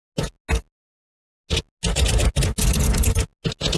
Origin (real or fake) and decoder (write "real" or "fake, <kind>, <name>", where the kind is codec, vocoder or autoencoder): real